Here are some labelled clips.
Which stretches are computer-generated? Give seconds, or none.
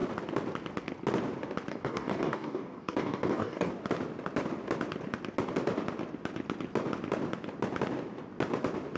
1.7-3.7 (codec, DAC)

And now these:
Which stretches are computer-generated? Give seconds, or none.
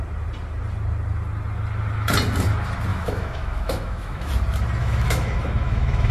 2.9-4.3 (autoencoder, DAC-VAE); 4.8-6.1